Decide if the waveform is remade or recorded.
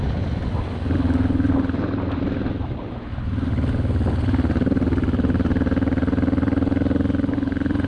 recorded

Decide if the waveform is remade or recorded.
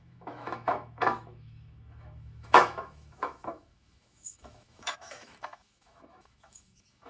remade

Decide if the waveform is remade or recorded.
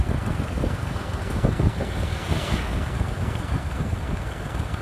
remade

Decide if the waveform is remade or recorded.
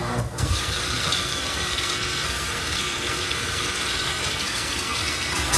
remade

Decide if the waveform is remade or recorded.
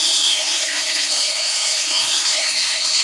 remade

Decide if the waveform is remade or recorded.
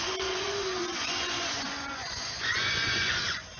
remade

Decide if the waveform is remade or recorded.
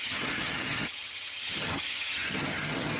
remade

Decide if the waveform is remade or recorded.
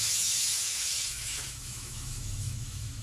remade